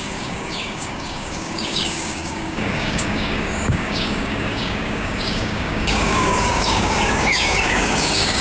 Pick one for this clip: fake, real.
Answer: fake